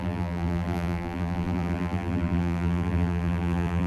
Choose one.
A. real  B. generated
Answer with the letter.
B